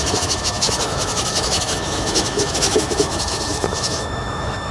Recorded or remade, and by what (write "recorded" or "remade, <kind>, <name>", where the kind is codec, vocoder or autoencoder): remade, autoencoder, DAC-VAE